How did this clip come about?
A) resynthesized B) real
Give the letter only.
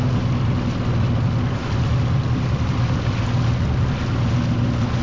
B